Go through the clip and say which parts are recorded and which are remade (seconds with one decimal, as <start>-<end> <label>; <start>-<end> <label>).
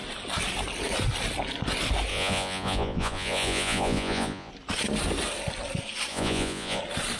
0.0-2.1 recorded; 2.1-4.5 remade; 4.5-6.1 recorded; 6.1-6.8 remade; 6.8-7.2 recorded